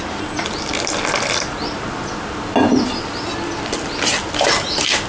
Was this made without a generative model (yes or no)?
yes